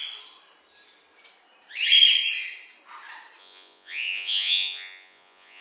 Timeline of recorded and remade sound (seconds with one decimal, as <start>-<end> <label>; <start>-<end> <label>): 0.0-3.4 recorded; 3.4-5.6 remade